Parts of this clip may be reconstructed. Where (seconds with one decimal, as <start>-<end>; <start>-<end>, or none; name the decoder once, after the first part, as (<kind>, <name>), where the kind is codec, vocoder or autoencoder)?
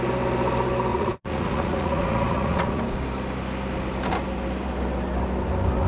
0.9-2.8 (vocoder, Vocos)